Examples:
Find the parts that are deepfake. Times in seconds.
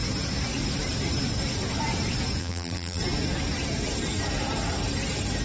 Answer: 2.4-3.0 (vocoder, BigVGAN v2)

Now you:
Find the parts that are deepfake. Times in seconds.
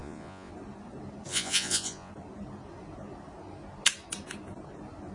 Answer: 0.0-0.5 (vocoder, Vocos); 1.3-2.1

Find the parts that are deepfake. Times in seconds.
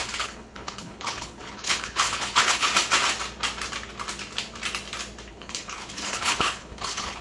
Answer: 0.0-2.7 (codec, HILCodec); 5.3-7.2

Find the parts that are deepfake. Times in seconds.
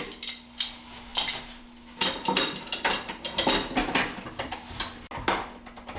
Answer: none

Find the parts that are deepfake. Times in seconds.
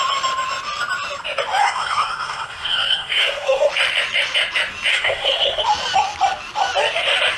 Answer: 1.6-3.7 (codec, SNAC); 4.9-5.6